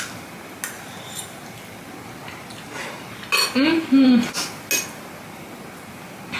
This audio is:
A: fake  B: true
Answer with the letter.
B